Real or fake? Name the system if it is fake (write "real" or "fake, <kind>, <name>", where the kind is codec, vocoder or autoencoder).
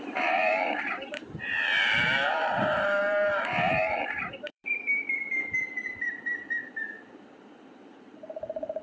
fake, vocoder, BigVGAN v2